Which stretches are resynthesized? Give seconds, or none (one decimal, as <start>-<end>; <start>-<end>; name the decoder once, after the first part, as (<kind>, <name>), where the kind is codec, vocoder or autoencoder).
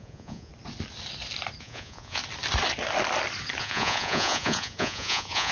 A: 0.0-0.5 (vocoder, Vocos); 1.6-2.2; 3.6-5.5